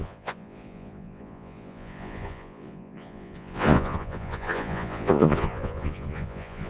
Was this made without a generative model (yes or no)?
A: no